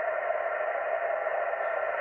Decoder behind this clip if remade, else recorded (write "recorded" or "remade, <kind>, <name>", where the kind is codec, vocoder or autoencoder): recorded